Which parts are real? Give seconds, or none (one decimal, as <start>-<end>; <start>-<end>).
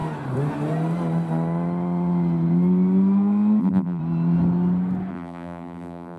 0.0-3.6; 4.0-5.1